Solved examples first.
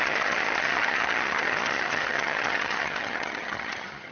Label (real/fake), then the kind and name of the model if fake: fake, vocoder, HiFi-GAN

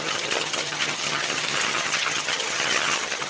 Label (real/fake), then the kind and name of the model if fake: fake, vocoder, HiFi-GAN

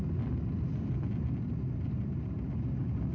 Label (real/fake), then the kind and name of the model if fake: real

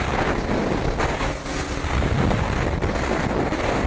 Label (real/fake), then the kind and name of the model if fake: real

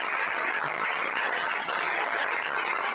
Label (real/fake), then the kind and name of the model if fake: fake, vocoder, HiFi-GAN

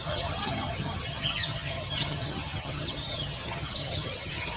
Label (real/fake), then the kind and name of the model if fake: fake, vocoder, HiFi-GAN